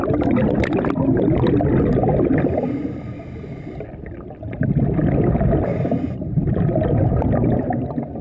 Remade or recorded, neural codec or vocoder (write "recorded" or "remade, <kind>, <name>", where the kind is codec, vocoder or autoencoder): recorded